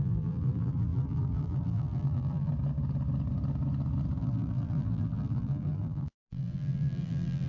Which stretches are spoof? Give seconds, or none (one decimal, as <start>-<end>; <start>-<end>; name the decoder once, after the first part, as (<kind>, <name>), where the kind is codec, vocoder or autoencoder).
0.0-2.5 (vocoder, BigVGAN v2); 4.2-7.5